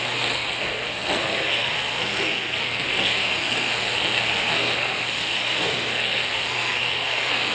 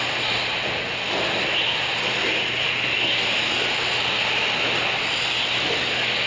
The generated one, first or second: first